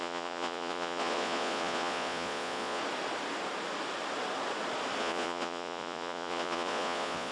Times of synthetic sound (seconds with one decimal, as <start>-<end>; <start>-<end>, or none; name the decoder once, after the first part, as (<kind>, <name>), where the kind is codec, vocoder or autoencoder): 0.0-2.8 (vocoder, Vocos); 5.0-7.3